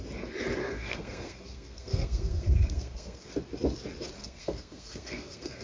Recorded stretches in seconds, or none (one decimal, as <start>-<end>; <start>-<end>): 0.0-0.6; 3.3-4.2